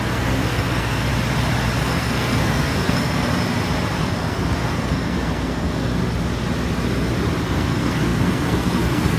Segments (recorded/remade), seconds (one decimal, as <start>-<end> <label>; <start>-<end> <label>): 0.0-1.1 remade; 1.1-1.8 recorded; 1.8-3.3 remade; 3.3-4.0 recorded; 4.0-6.0 remade; 6.0-7.4 recorded; 7.4-9.2 remade